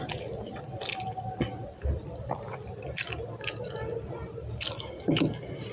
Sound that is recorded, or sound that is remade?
recorded